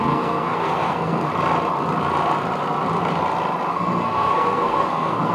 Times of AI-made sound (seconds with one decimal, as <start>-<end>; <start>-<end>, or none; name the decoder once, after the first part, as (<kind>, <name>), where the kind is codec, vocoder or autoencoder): 0.0-1.3 (codec, SNAC); 3.7-5.3